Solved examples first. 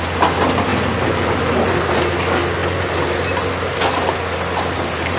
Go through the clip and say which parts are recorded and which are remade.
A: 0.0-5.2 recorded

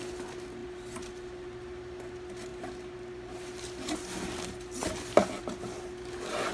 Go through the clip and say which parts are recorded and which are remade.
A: 0.0-6.5 recorded

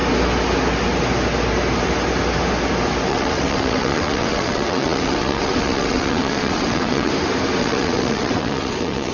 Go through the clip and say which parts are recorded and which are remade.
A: 0.0-3.1 recorded; 3.1-7.1 remade; 7.1-7.6 recorded; 7.6-9.1 remade

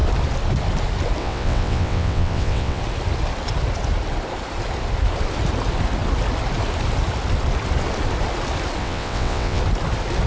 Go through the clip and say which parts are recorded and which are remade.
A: 0.0-1.2 recorded; 1.2-2.8 remade; 2.8-8.8 recorded; 8.8-9.6 remade; 9.6-10.3 recorded

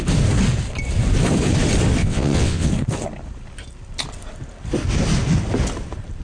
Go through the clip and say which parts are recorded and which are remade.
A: 0.0-2.0 recorded; 2.0-2.7 remade; 2.7-6.2 recorded

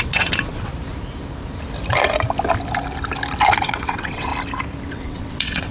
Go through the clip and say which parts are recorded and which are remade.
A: 0.0-0.7 remade; 0.7-3.6 recorded; 3.6-4.3 remade; 4.3-4.9 recorded; 4.9-5.7 remade

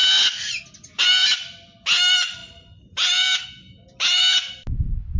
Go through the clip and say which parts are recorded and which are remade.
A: 0.0-5.2 recorded

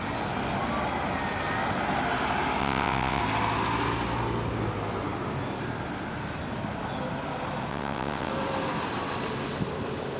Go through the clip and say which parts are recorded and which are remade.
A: 0.0-2.6 recorded; 2.6-3.2 remade; 3.2-7.7 recorded; 7.7-8.3 remade; 8.3-10.2 recorded